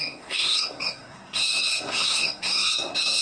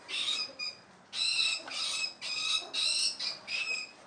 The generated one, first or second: first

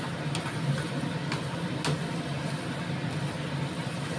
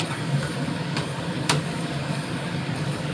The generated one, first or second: second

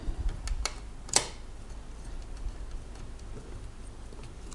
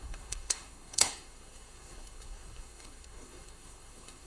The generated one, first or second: second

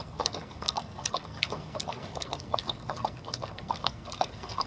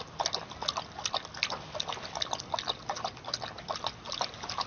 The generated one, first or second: first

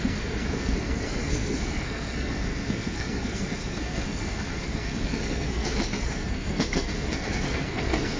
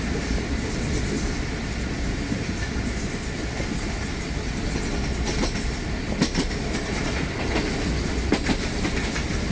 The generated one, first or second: first